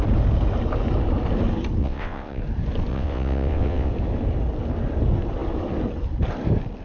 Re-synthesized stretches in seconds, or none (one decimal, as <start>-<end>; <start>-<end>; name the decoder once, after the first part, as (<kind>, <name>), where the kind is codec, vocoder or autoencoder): 1.8-2.4 (vocoder, WaveNeXt); 2.9-3.9